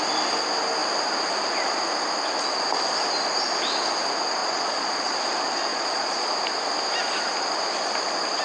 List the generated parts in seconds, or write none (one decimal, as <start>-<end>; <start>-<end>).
4.4-5.1; 5.7-6.3